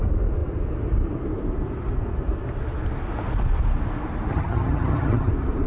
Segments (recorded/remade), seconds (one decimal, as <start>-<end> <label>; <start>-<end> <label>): 0.0-4.3 recorded; 4.3-5.3 remade; 5.3-5.7 recorded